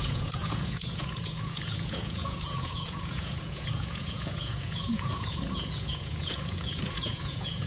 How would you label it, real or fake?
fake